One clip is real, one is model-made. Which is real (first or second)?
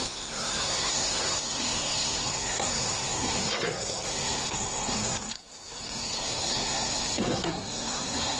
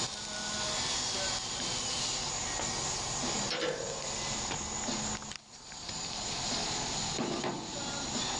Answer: second